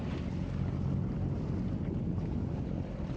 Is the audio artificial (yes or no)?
no